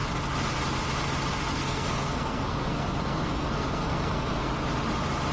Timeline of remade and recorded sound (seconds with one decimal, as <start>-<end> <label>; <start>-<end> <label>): 0.0-1.5 recorded; 1.5-4.5 remade; 4.5-5.3 recorded